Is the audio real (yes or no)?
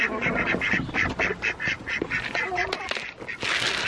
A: yes